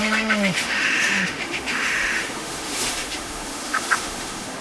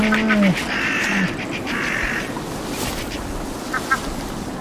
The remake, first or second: first